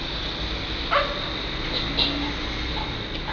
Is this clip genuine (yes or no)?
yes